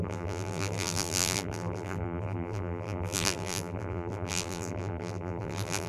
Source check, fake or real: fake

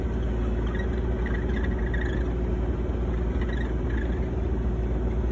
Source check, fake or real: real